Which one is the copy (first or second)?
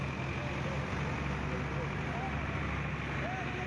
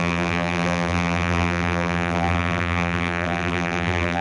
second